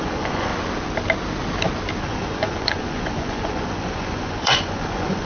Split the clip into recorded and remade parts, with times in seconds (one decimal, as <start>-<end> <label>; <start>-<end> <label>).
0.0-0.5 remade; 0.5-2.0 recorded; 2.0-5.3 remade